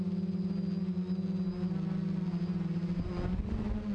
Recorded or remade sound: recorded